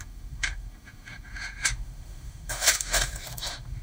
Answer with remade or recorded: remade